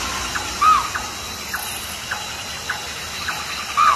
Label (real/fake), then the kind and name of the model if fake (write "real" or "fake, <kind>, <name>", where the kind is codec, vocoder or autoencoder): real